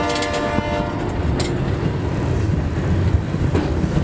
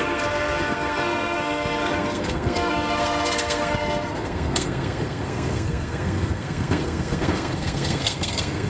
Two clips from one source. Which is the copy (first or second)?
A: second